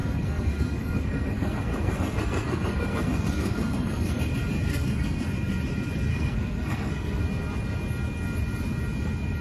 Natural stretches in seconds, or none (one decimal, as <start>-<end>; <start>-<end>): 4.2-4.7; 5.3-6.1; 7.2-9.4